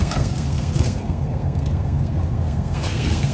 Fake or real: fake